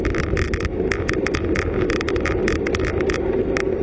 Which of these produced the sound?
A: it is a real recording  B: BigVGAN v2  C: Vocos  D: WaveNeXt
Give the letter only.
A